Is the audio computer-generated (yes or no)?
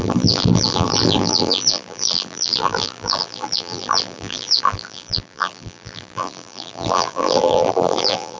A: yes